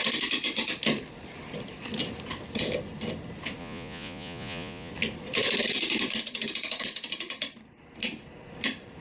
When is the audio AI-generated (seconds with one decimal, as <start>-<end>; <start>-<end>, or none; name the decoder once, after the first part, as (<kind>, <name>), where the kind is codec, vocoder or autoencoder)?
3.6-4.9 (vocoder, Vocos)